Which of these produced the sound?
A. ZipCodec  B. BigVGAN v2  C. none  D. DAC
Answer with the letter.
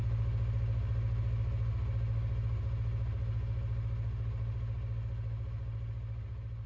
C